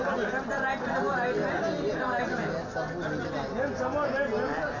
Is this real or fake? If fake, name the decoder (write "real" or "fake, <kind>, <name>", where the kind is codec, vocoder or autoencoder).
real